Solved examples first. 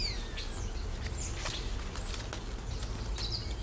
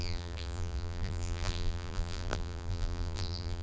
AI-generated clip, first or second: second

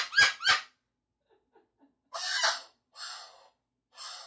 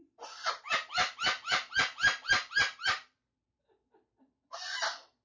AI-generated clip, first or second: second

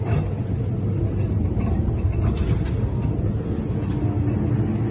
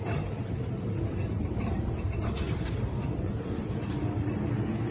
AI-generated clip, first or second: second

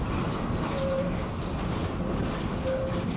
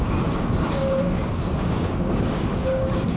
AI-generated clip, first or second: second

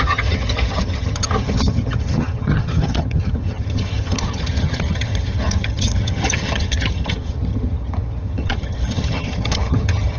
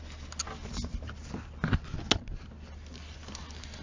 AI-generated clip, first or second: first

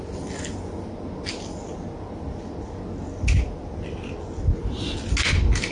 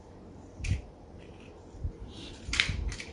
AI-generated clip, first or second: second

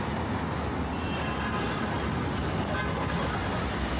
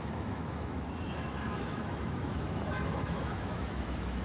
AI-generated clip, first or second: second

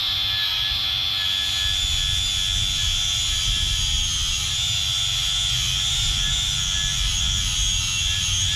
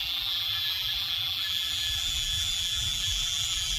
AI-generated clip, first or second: second